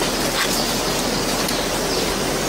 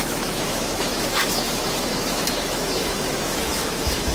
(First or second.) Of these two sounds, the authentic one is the first